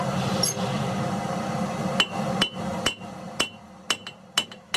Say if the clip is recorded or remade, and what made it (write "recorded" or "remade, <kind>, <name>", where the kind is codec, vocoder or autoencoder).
recorded